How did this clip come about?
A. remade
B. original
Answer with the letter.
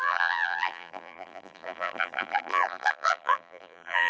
A